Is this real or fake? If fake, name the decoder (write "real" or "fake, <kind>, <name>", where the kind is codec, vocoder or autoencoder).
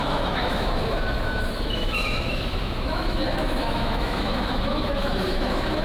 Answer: fake, autoencoder, DAC-VAE